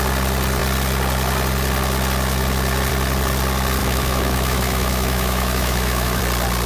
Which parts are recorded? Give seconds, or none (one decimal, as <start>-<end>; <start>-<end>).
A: 0.0-3.8; 6.2-6.7